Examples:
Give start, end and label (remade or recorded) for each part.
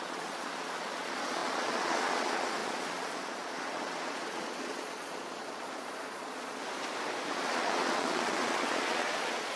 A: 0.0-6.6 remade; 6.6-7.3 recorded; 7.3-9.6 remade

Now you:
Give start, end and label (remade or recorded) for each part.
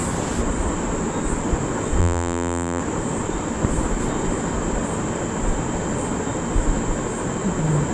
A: 0.0-2.0 recorded; 2.0-2.8 remade; 2.8-7.9 recorded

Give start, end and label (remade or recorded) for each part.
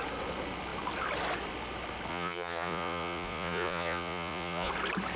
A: 0.0-2.1 recorded; 2.1-4.7 remade; 4.7-5.2 recorded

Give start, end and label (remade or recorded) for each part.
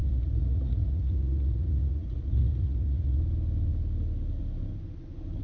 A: 0.0-3.2 remade; 3.2-5.4 recorded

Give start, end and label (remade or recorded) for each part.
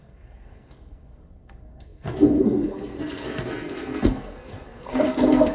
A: 0.0-5.5 remade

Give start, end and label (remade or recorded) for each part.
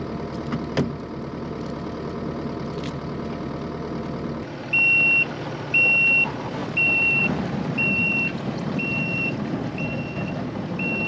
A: 0.0-6.6 recorded; 6.6-9.5 remade; 9.5-11.1 recorded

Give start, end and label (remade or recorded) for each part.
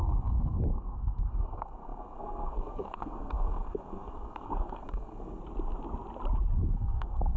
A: 0.0-5.4 remade; 5.4-6.6 recorded; 6.6-7.4 remade